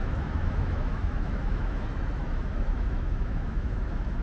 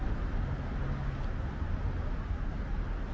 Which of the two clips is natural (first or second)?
second